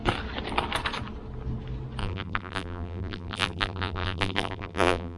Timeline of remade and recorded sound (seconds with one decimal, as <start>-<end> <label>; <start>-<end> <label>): 0.0-2.0 recorded; 2.0-5.2 remade